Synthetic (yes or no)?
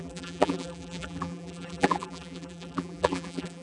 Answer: yes